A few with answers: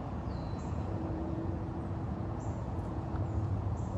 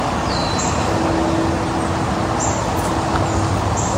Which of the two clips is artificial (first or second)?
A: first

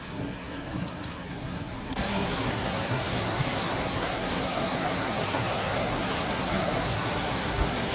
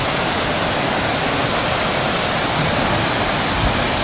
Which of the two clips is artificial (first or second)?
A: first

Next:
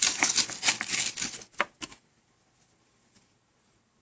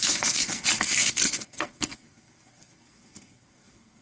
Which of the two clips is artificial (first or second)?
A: second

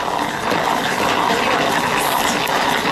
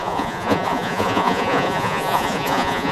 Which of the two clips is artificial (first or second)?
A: second